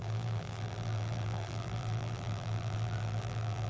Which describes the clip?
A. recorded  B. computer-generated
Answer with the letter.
B